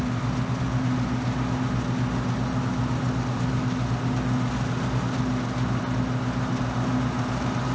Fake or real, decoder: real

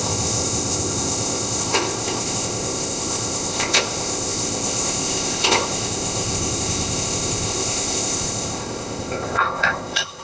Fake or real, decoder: fake, codec, ZipCodec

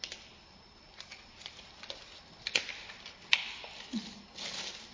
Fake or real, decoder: real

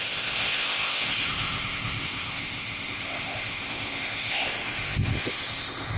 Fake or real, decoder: fake, codec, ZipCodec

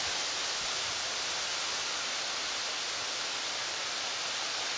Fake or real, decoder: real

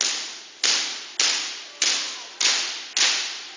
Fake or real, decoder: real